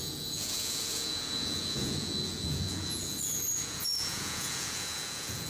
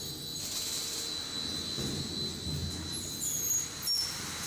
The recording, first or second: second